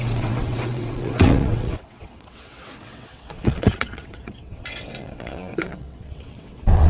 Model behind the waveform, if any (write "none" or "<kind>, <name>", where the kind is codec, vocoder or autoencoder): vocoder, WaveNeXt